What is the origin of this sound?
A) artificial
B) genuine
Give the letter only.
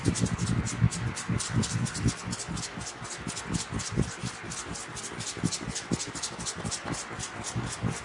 B